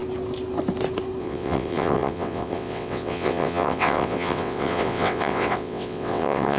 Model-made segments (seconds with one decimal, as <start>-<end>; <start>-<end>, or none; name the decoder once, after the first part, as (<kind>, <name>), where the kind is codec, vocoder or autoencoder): 1.2-6.6 (vocoder, WaveNeXt)